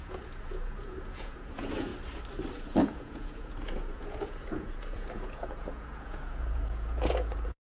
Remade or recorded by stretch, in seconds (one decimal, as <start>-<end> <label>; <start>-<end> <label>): 0.0-1.9 remade; 1.9-2.5 recorded; 2.5-7.7 remade